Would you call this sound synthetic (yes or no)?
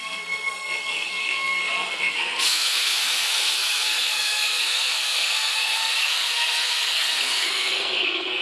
yes